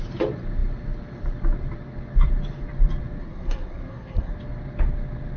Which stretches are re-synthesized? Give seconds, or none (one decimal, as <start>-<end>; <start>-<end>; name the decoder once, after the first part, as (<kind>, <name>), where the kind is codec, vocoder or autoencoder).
3.2-4.3 (codec, SNAC)